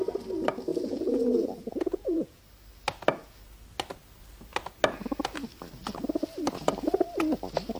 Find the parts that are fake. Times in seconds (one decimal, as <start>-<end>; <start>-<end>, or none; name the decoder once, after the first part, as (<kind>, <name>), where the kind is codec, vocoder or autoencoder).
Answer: 0.7-2.4 (vocoder, Vocos)